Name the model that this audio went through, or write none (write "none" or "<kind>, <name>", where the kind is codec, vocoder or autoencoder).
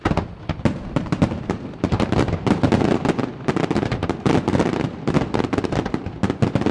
none